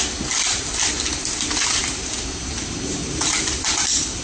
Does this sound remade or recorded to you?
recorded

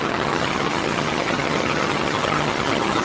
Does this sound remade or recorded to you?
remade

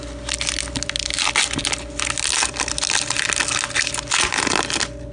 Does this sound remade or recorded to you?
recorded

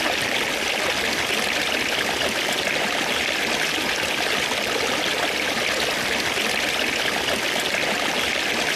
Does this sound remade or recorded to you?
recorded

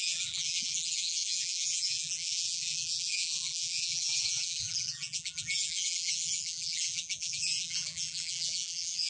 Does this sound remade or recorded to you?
remade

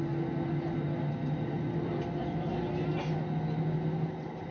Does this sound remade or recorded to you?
recorded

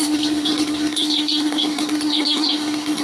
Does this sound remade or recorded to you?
remade